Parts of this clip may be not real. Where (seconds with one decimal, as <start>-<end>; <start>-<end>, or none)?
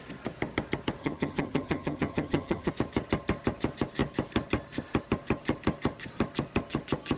1.0-2.7